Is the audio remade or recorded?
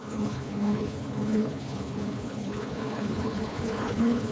remade